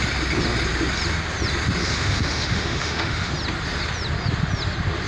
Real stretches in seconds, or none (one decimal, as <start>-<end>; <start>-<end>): 0.0-1.8; 3.3-5.1